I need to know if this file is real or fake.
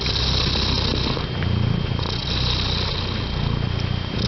real